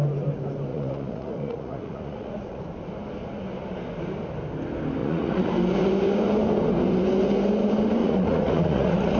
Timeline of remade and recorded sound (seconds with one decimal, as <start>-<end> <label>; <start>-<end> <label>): 0.0-0.7 recorded; 0.7-2.6 remade; 2.6-5.0 recorded; 5.0-5.5 remade; 5.5-8.0 recorded; 8.0-9.2 remade